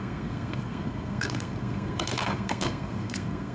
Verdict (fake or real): fake